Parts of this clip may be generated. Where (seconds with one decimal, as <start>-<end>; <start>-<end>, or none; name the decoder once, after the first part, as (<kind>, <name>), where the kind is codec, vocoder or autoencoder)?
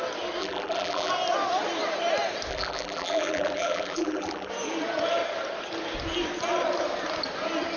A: 0.4-1.1 (vocoder, BigVGAN v2); 2.5-4.5